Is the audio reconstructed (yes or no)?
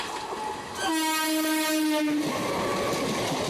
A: no